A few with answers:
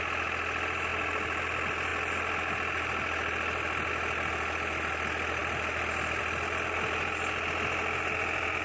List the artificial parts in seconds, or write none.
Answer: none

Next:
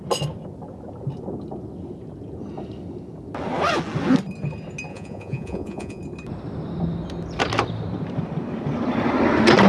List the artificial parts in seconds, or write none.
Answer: 4.9-6.0 (vocoder, Vocos)